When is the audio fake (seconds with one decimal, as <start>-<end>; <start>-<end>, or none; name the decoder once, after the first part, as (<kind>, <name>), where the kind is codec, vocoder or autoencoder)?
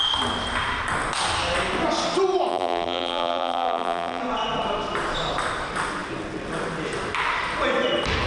2.5-4.2 (vocoder, BigVGAN v2)